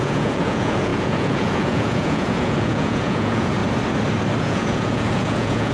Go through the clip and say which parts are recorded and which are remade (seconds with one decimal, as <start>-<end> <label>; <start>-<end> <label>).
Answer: 0.0-3.6 remade; 3.6-4.4 recorded; 4.4-5.7 remade

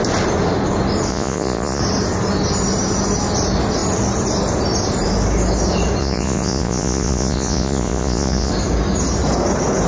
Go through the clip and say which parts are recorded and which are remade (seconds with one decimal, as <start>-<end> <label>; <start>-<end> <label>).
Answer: 0.0-1.1 recorded; 1.1-1.8 remade; 1.8-6.0 recorded; 6.0-8.5 remade; 8.5-9.9 recorded

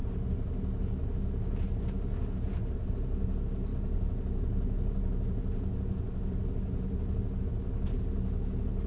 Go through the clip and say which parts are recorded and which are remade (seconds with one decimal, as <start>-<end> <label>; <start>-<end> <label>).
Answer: 0.0-8.9 recorded

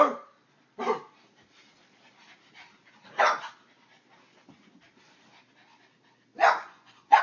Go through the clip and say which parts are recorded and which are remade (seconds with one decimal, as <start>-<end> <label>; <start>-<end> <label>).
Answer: 0.0-6.3 recorded; 6.3-7.2 remade

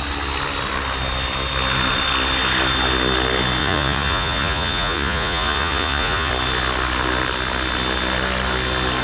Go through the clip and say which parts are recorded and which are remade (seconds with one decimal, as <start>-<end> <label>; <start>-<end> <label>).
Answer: 0.0-3.6 recorded; 3.6-6.3 remade; 6.3-9.0 recorded